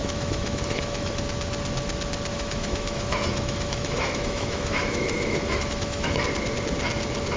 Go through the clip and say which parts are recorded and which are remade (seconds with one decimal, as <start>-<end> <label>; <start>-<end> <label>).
0.0-1.2 remade; 1.2-2.3 recorded; 2.3-6.2 remade; 6.2-7.4 recorded

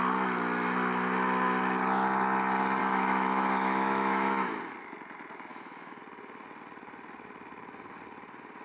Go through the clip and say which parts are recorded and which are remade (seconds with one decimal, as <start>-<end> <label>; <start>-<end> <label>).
0.0-2.8 recorded; 2.8-4.6 remade; 4.6-5.5 recorded; 5.5-6.0 remade; 6.0-8.6 recorded

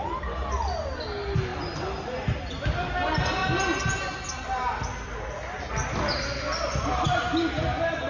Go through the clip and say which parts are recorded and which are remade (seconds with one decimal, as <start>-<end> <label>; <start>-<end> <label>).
0.0-8.1 recorded

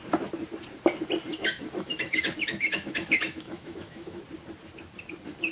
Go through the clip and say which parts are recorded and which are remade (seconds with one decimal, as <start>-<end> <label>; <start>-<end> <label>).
0.0-1.3 recorded; 1.3-4.2 remade; 4.2-5.5 recorded